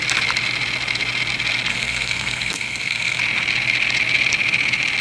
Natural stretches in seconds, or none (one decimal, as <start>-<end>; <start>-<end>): 0.0-1.7; 3.2-5.0